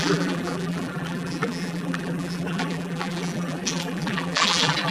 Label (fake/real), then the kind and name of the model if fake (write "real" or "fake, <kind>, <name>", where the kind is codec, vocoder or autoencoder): fake, vocoder, BigVGAN v2